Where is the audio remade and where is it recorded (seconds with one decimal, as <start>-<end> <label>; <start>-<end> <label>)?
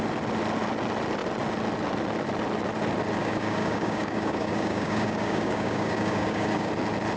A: 0.0-3.2 recorded; 3.2-6.7 remade; 6.7-7.2 recorded